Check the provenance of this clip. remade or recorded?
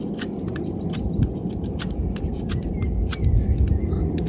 recorded